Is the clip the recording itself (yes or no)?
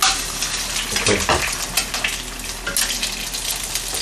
yes